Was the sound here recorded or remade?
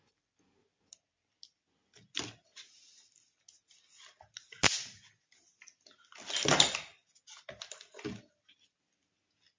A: recorded